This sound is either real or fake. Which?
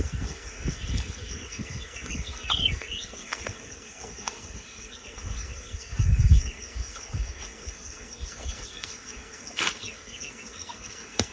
fake